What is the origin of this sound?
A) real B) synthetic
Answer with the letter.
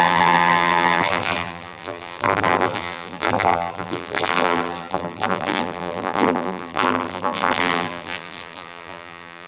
B